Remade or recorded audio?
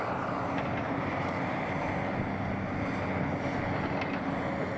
recorded